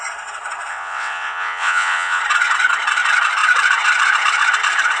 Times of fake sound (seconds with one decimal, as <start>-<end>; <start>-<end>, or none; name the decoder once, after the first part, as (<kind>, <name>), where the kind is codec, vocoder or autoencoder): 0.7-2.2 (vocoder, WaveNeXt)